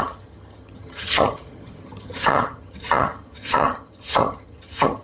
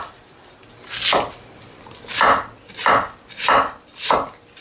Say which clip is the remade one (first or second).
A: first